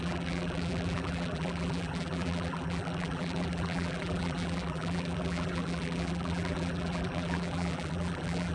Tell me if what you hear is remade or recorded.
remade